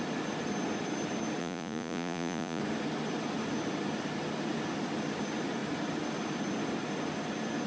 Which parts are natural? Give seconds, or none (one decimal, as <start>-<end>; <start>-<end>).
0.0-1.4; 2.6-7.7